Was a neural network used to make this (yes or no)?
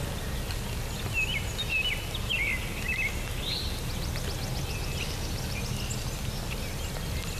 no